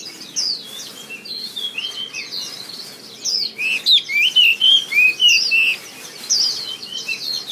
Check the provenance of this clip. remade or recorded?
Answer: recorded